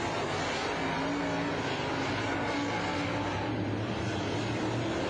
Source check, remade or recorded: recorded